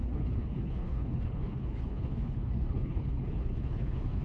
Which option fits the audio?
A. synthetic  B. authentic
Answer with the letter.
A